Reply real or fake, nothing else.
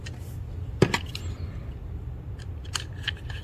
real